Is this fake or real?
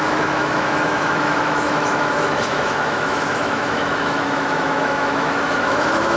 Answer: fake